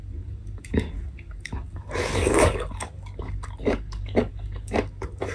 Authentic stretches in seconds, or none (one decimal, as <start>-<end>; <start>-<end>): none